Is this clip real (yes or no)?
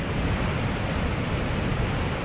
yes